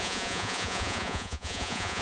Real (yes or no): no